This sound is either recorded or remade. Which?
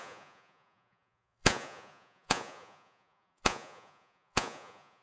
remade